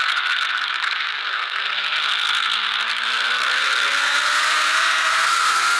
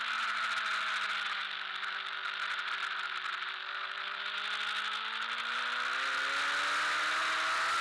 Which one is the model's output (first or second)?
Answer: first